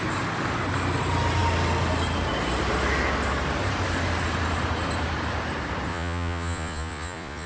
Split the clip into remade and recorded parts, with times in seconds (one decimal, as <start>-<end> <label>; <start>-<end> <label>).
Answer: 0.0-5.9 recorded; 5.9-7.5 remade